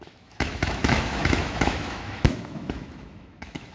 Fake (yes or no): yes